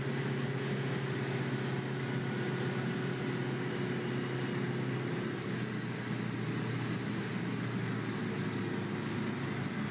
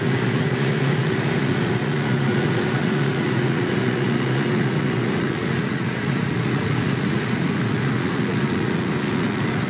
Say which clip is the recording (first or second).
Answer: first